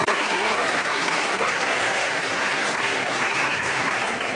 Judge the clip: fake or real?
fake